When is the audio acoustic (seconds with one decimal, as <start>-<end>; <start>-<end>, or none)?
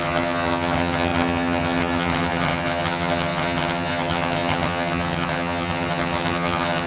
none